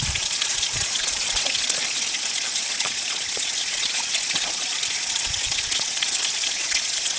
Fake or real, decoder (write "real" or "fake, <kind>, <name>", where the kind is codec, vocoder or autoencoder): fake, vocoder, Vocos